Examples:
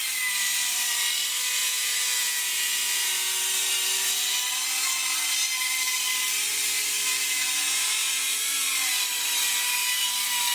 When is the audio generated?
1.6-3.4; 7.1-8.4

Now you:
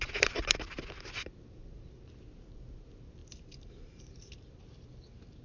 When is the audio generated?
1.6-2.1; 3.2-4.3

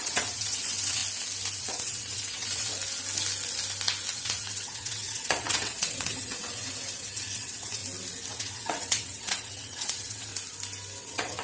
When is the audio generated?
0.0-1.0; 1.6-2.7; 4.1-7.8; 8.3-10.3; 11.0-11.4

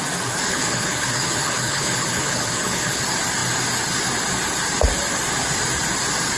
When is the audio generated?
0.5-3.0

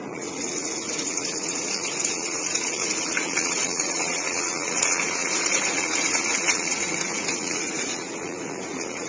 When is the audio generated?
0.0-9.1

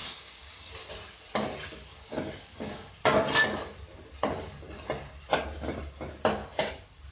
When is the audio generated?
0.0-0.7; 1.9-2.9

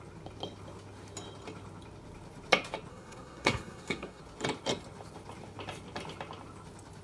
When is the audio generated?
2.9-4.2